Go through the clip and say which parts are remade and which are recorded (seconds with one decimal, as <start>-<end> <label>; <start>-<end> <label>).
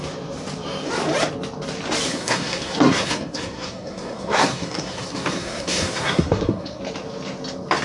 0.0-2.1 recorded; 2.1-6.8 remade; 6.8-7.8 recorded